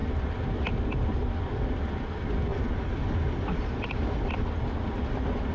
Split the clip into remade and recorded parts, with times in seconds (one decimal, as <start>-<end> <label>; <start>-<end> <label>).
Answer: 0.0-2.5 recorded; 2.5-4.5 remade; 4.5-5.5 recorded